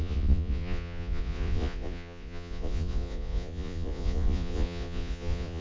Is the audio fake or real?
fake